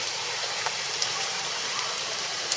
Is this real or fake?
fake